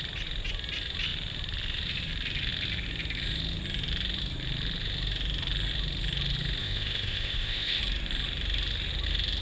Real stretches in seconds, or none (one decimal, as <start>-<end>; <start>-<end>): 0.0-6.6; 7.8-9.4